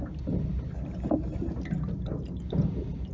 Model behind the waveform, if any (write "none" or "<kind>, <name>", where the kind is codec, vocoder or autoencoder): none